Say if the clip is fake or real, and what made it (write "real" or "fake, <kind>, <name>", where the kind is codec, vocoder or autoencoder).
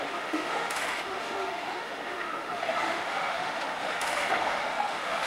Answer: fake, autoencoder, DAC-VAE